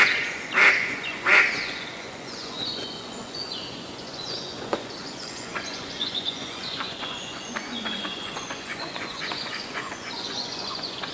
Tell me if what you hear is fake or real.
fake